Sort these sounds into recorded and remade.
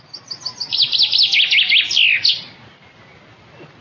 recorded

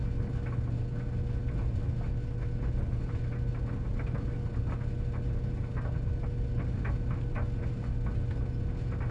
recorded